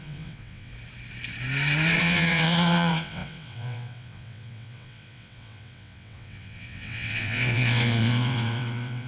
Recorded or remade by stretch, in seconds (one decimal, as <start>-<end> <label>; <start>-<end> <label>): 0.0-0.7 remade; 0.7-2.0 recorded; 2.0-9.1 remade